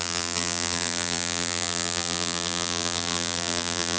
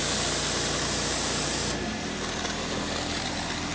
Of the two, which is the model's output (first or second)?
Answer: first